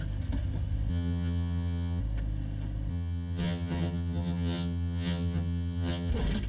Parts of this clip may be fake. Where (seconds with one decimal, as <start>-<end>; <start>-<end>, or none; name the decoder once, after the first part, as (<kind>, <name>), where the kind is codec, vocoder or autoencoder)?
0.9-2.0 (vocoder, HiFi-GAN); 2.9-6.1